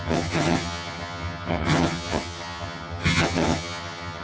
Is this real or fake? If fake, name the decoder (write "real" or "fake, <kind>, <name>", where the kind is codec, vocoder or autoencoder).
fake, vocoder, HiFi-GAN